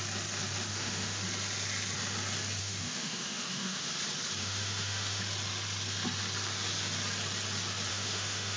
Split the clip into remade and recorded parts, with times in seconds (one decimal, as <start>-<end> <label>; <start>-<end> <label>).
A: 0.0-0.7 recorded; 0.7-1.2 remade; 1.2-2.6 recorded; 2.6-3.9 remade; 3.9-4.4 recorded; 4.4-5.2 remade; 5.2-7.9 recorded; 7.9-8.6 remade

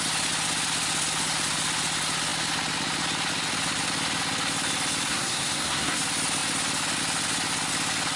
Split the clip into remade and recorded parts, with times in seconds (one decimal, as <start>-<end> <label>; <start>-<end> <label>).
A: 0.0-5.1 recorded; 5.1-6.0 remade; 6.0-8.2 recorded

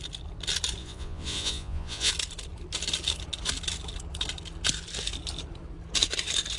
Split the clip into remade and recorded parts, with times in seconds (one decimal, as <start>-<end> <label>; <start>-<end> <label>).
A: 0.0-0.8 recorded; 0.8-2.1 remade; 2.1-6.6 recorded

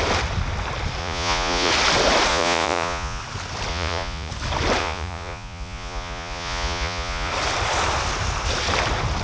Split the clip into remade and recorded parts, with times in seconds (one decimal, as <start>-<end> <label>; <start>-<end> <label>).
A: 0.0-1.0 recorded; 1.0-1.7 remade; 1.7-2.3 recorded; 2.3-3.2 remade; 3.2-3.7 recorded; 3.7-4.3 remade; 4.3-4.8 recorded; 4.8-7.3 remade; 7.3-9.2 recorded

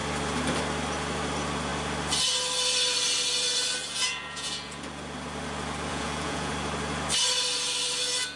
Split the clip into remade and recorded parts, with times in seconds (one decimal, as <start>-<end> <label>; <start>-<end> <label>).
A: 0.0-3.8 recorded; 3.8-4.8 remade; 4.8-5.9 recorded; 5.9-6.5 remade; 6.5-8.4 recorded